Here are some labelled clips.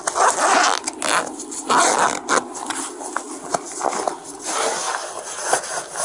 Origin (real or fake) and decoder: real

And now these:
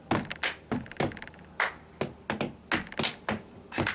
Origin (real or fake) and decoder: real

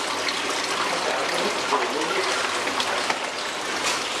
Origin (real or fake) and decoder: real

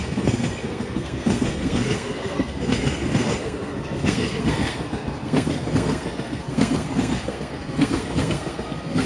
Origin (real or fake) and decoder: fake, codec, SNAC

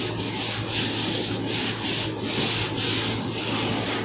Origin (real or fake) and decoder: real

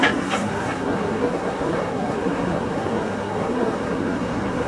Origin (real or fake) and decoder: fake, codec, SNAC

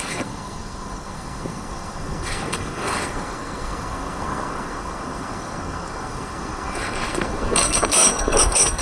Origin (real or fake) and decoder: fake, codec, SNAC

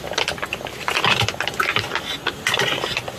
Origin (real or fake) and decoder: real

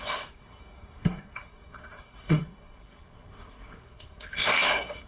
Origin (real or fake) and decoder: fake, codec, SNAC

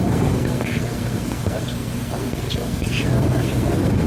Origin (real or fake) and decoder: fake, codec, SNAC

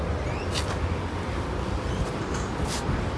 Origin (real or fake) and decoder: real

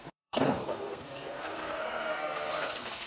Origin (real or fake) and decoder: fake, codec, SNAC